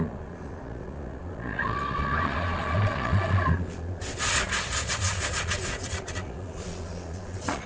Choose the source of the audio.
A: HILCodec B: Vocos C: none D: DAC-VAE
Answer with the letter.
B